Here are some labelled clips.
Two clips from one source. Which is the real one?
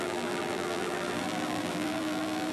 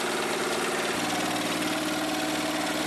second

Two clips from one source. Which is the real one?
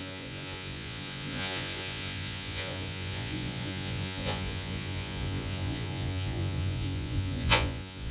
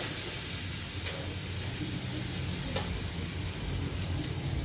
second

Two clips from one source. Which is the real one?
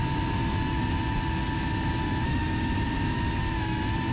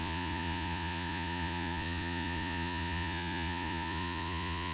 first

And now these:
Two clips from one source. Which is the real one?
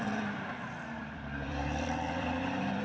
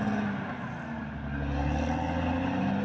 second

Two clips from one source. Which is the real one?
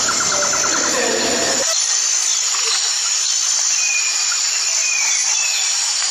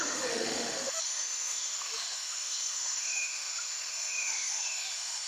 first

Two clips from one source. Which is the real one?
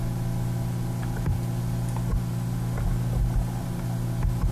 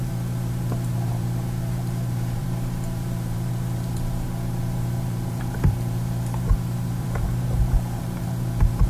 first